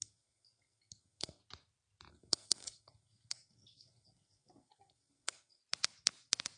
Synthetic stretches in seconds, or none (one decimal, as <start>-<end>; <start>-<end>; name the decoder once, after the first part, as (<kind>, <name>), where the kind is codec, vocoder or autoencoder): 0.0-1.4 (codec, SNAC); 2.1-5.6

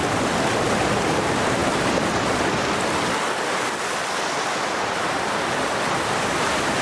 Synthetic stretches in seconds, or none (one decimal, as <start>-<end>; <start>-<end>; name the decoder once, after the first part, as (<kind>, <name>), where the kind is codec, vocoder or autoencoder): none

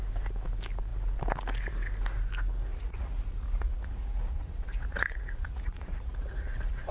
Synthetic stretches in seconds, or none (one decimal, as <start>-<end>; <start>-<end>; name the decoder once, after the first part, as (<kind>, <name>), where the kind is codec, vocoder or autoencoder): 2.7-6.9 (vocoder, Vocos)

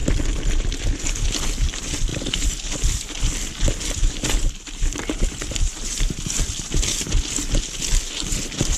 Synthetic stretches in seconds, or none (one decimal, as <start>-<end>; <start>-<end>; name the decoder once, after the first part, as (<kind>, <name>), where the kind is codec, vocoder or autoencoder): 0.0-1.0 (vocoder, BigVGAN v2); 2.1-6.4

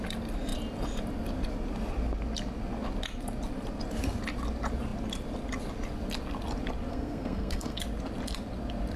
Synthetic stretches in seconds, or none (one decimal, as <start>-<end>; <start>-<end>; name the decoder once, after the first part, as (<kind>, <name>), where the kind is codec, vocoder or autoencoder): 6.9-7.8 (codec, SNAC)